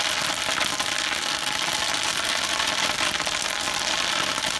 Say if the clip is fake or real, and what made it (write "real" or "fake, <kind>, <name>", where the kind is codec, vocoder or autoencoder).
real